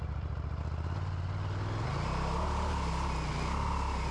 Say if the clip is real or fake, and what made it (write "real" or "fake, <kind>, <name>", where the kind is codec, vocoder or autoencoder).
real